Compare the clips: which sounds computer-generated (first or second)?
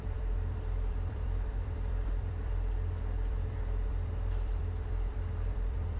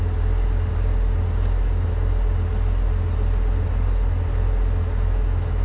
first